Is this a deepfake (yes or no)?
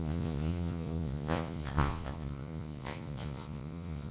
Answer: yes